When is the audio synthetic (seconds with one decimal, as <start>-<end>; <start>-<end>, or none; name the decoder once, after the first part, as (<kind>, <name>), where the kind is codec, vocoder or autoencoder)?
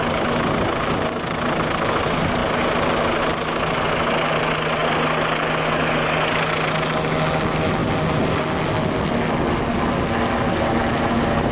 none